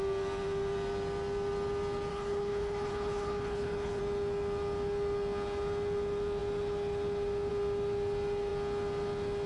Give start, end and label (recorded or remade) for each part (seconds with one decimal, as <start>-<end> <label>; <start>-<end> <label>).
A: 0.0-2.1 recorded; 2.1-4.0 remade; 4.0-9.5 recorded